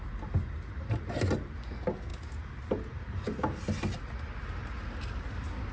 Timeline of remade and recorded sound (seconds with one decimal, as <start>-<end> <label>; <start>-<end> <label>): 0.0-5.7 recorded